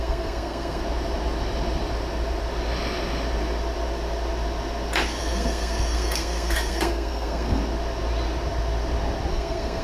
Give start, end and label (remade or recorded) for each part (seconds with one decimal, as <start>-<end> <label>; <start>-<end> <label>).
0.0-0.8 remade; 0.8-5.2 recorded; 5.2-7.6 remade; 7.6-9.3 recorded; 9.3-9.8 remade